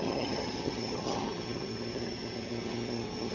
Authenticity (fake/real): fake